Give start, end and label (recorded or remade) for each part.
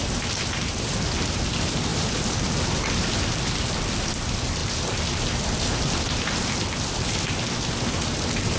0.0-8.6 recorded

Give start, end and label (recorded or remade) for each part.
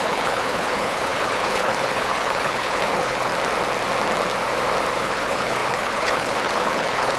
0.0-3.3 remade; 3.3-5.0 recorded; 5.0-7.2 remade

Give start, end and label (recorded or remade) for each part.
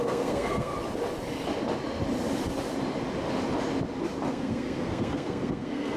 0.0-0.7 remade; 0.7-4.3 recorded; 4.3-6.0 remade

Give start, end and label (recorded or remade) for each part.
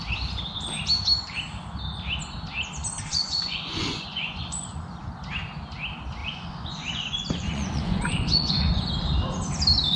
0.0-3.1 recorded; 3.1-5.0 remade; 5.0-6.2 recorded; 6.2-8.9 remade; 8.9-10.0 recorded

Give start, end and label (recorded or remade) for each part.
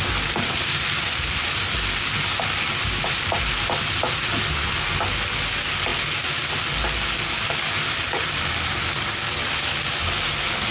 0.0-10.7 recorded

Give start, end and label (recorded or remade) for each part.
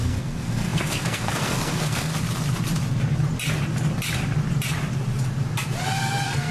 0.0-2.1 remade; 2.1-6.0 recorded; 6.0-6.5 remade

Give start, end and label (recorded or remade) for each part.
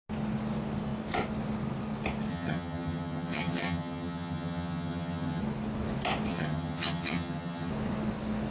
0.0-2.3 recorded; 2.3-5.4 remade; 5.4-6.3 recorded; 6.3-7.7 remade; 7.7-8.5 recorded